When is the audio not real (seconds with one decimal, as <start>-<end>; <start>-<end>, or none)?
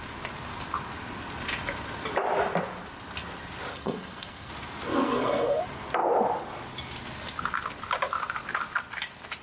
3.7-4.5; 4.9-5.6